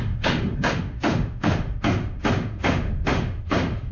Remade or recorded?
remade